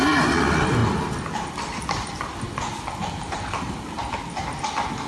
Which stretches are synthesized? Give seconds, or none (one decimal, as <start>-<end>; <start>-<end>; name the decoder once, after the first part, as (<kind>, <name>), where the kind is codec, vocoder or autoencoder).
none